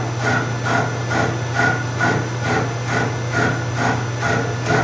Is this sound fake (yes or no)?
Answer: no